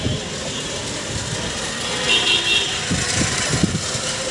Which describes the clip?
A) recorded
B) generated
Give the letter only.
A